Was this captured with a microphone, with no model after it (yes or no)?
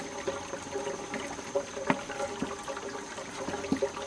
yes